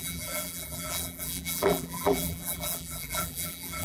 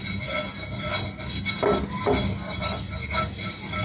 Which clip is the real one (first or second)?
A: second